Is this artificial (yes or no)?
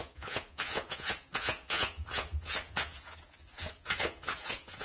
yes